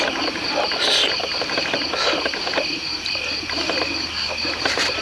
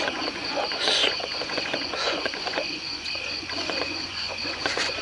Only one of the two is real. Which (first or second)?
first